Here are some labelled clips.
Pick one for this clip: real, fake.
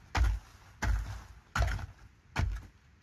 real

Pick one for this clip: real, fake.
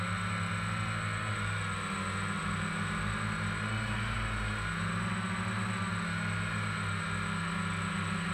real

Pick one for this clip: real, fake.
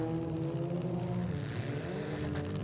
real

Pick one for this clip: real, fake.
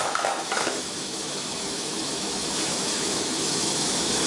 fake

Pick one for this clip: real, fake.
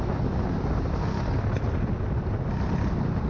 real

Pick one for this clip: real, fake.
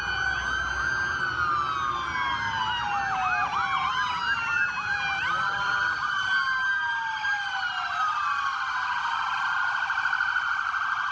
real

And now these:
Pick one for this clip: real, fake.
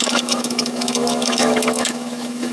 fake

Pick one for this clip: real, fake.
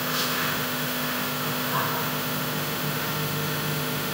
fake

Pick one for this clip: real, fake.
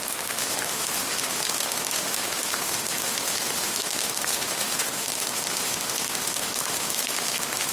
fake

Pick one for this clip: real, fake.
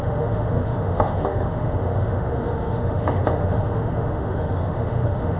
fake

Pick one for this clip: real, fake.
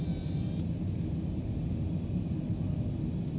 real